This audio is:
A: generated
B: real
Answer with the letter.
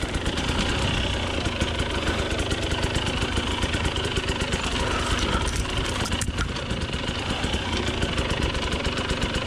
A